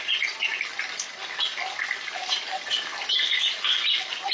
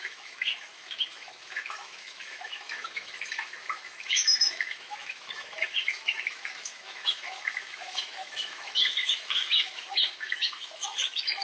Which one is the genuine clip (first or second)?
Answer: first